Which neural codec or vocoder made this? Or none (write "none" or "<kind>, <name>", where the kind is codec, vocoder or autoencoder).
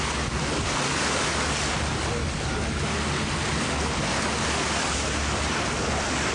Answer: none